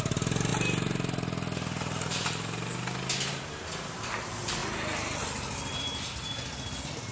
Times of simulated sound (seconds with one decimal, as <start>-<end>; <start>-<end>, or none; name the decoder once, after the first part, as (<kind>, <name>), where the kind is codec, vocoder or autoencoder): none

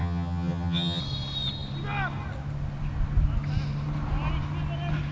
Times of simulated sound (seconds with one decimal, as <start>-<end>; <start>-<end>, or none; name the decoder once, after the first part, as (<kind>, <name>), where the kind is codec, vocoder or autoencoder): 0.0-1.0 (vocoder, HiFi-GAN)

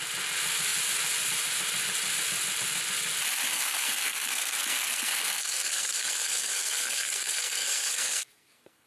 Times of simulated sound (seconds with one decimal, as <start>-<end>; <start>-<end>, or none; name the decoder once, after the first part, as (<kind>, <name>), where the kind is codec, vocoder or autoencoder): 3.5-8.9 (codec, SNAC)

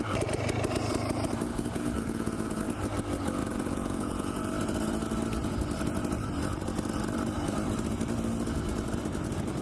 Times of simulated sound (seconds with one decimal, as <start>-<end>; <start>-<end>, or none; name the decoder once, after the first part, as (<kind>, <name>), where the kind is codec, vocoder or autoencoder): 1.5-2.6 (vocoder, Vocos); 3.4-4.5